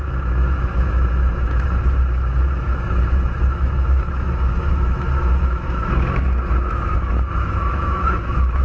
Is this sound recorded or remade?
remade